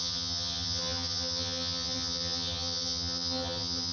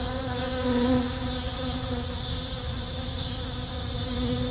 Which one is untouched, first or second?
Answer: second